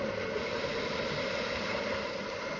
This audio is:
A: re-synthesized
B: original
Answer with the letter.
B